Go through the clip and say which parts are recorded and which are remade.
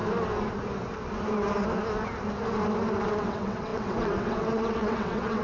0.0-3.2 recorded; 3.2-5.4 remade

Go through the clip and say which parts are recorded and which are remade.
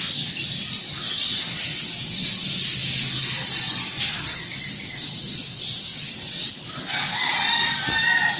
0.0-1.7 recorded; 1.7-2.4 remade; 2.4-5.9 recorded; 5.9-6.5 remade; 6.5-8.4 recorded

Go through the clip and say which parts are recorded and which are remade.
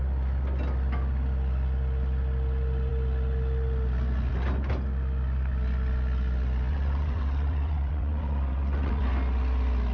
0.0-6.7 recorded; 6.7-9.0 remade; 9.0-9.9 recorded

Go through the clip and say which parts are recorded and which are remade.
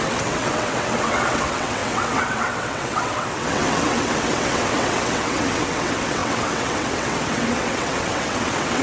0.0-8.8 remade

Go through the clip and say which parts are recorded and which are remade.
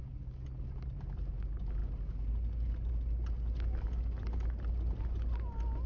0.0-5.9 recorded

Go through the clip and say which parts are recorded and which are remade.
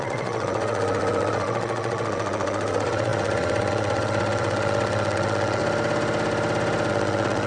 0.0-5.6 remade; 5.6-6.9 recorded; 6.9-7.5 remade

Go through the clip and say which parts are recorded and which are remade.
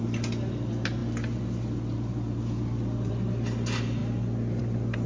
0.0-5.1 recorded